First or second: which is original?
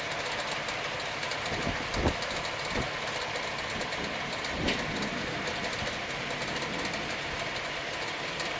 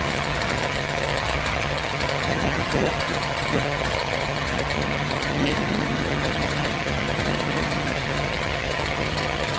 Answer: first